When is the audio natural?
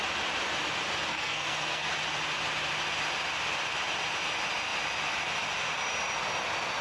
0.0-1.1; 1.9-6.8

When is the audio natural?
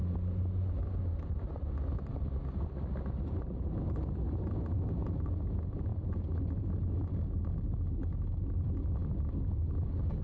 0.0-10.2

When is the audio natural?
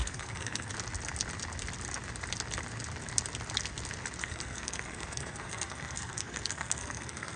0.7-4.2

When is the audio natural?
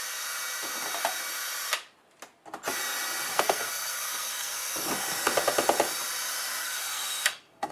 0.0-3.3; 4.9-6.6